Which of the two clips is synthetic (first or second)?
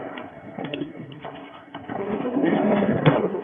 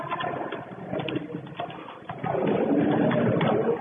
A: first